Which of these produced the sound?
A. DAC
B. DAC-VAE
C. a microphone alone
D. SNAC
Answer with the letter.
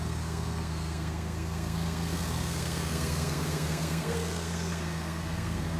D